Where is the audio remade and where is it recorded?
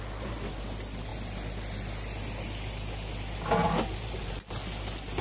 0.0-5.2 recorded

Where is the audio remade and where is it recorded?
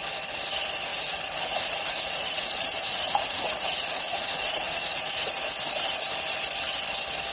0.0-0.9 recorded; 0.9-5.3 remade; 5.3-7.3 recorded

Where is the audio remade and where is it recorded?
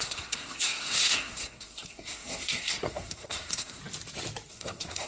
0.0-3.8 remade; 3.8-4.5 recorded; 4.5-5.1 remade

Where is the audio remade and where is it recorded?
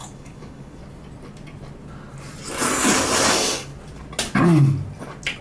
0.0-0.8 remade; 0.8-3.3 recorded; 3.3-3.7 remade; 3.7-5.4 recorded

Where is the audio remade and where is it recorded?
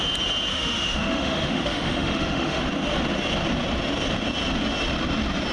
0.0-0.5 recorded; 0.5-2.6 remade; 2.6-5.5 recorded